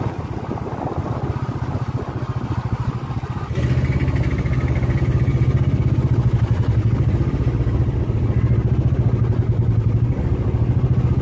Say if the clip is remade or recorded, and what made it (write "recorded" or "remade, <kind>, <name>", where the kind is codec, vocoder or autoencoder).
recorded